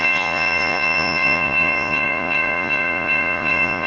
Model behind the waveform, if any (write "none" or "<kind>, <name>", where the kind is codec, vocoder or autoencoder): vocoder, Vocos